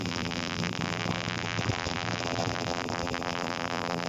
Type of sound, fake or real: fake